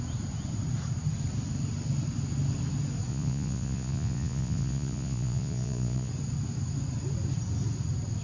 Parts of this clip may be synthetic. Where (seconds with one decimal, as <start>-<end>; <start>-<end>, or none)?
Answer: 3.1-6.1